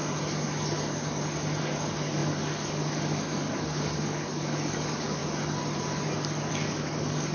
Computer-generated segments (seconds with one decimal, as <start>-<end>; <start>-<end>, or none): 1.6-5.2; 6.5-7.3